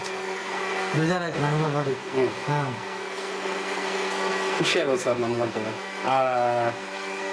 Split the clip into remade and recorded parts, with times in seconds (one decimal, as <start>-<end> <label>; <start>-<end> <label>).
0.0-7.3 remade